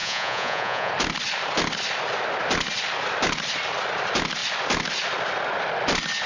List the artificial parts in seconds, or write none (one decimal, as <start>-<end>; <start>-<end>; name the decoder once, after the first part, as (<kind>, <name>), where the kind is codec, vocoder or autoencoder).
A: 0.0-0.9 (vocoder, Vocos)

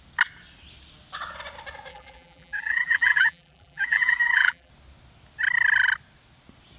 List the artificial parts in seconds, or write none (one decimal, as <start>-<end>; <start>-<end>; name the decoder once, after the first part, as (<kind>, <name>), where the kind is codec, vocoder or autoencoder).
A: 1.9-4.7 (vocoder, BigVGAN v2)

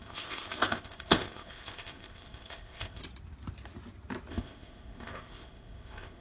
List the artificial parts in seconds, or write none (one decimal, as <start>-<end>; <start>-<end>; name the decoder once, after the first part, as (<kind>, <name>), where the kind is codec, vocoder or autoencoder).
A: 0.0-3.0 (codec, ZipCodec); 4.3-6.2

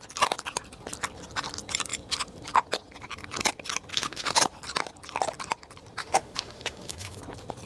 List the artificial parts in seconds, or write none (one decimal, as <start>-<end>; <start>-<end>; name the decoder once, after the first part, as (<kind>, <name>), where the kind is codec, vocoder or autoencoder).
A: 3.9-4.4 (autoencoder, DAC-VAE); 6.0-7.2

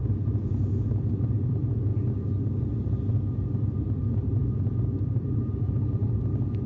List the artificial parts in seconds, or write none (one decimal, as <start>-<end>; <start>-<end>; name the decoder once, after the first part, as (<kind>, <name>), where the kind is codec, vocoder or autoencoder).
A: 0.0-1.9 (vocoder, BigVGAN v2); 3.5-6.7

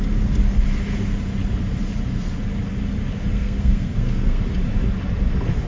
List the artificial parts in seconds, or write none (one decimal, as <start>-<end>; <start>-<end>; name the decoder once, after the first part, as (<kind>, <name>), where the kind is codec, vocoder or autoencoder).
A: 3.3-4.4 (codec, SNAC)